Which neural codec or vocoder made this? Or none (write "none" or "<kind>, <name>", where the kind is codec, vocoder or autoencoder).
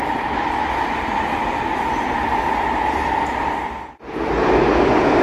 none